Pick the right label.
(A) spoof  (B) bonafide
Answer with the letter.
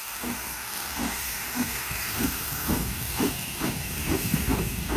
A